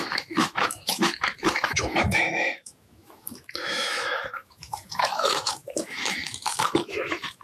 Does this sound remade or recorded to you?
remade